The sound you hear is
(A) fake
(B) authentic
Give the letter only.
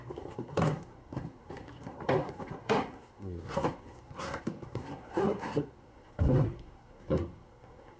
A